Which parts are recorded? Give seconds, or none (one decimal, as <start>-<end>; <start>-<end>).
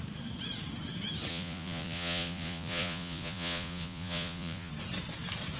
0.0-1.3; 4.7-5.6